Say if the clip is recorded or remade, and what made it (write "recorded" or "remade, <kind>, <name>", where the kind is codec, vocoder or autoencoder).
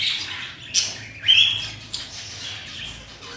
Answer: recorded